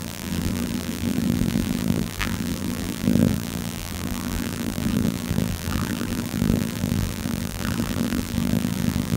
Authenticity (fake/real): fake